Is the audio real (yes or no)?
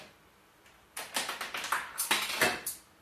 yes